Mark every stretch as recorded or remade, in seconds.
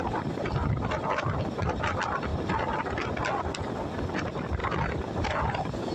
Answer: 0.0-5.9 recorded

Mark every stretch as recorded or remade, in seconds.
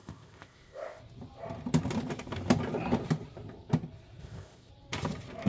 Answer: 0.0-1.0 remade; 1.0-4.2 recorded; 4.2-4.7 remade; 4.7-5.5 recorded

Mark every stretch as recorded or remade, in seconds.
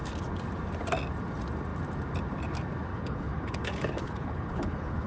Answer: 0.0-2.9 recorded; 2.9-5.1 remade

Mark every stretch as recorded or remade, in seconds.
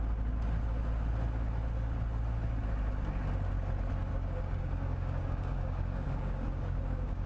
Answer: 0.0-4.1 recorded; 4.1-7.3 remade